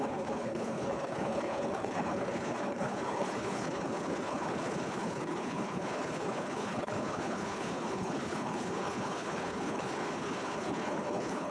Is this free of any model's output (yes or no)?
no